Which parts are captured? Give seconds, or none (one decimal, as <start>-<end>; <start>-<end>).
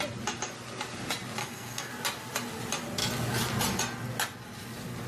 0.0-1.4; 1.9-5.1